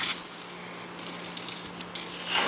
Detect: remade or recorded recorded